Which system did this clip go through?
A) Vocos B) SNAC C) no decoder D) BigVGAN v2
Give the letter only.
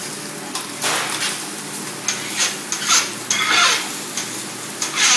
C